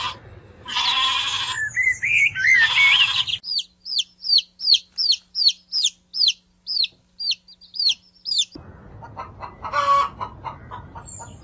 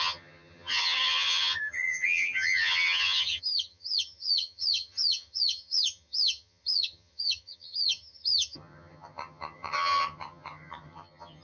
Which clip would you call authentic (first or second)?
first